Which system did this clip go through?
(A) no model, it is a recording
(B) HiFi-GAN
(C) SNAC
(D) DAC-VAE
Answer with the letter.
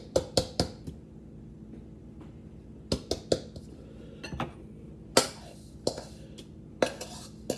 A